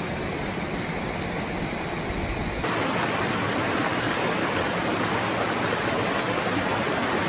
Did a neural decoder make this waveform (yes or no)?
no